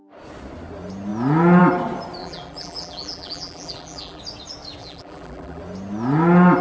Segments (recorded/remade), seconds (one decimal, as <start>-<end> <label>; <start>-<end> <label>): 0.0-2.2 recorded; 2.2-4.2 remade; 4.2-4.8 recorded; 4.8-5.6 remade; 5.6-6.6 recorded